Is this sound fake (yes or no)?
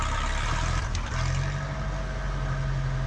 no